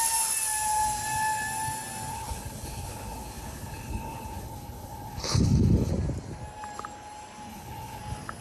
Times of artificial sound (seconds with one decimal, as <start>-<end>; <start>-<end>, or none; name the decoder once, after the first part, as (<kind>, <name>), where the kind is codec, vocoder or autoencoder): 2.1-5.9 (codec, HILCodec); 7.5-8.0

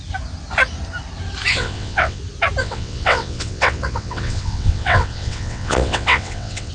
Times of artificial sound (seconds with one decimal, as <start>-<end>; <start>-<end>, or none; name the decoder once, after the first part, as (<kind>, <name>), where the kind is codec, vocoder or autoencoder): 1.5-2.2 (vocoder, WaveNeXt); 2.6-6.7

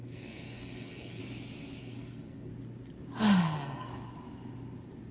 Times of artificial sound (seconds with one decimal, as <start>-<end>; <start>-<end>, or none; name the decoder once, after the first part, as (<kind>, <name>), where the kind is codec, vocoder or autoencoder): 0.0-1.2 (codec, SNAC); 1.8-2.5; 3.4-3.9

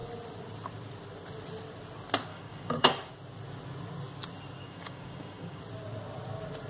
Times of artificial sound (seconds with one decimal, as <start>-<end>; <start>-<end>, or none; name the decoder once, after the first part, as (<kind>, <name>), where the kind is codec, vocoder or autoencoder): 2.3-3.1 (codec, DAC); 4.6-5.6